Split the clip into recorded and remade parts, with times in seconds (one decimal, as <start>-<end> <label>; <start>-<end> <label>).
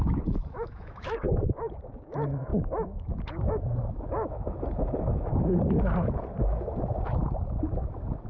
0.0-5.3 remade; 5.3-6.4 recorded; 6.4-7.2 remade; 7.2-7.8 recorded; 7.8-8.3 remade